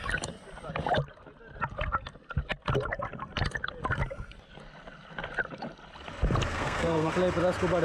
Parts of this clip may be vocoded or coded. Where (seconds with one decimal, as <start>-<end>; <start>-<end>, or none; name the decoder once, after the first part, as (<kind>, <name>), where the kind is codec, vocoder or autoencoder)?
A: 6.5-7.1 (codec, SNAC)